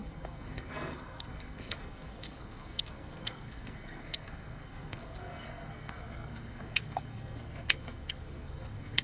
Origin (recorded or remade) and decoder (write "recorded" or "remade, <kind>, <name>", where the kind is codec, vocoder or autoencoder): remade, codec, SNAC